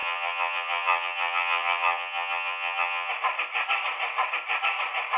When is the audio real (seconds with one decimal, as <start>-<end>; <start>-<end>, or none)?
3.1-5.2